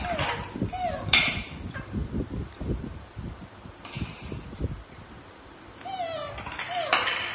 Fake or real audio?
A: real